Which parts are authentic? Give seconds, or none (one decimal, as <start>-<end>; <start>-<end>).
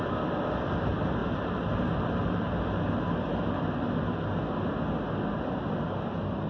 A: 0.0-1.2; 3.6-6.5